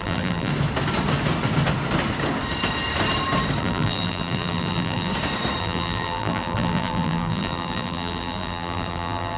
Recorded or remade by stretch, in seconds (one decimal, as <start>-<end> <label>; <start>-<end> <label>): 0.0-0.5 remade; 0.5-3.6 recorded; 3.6-5.1 remade; 5.1-5.6 recorded; 5.6-9.4 remade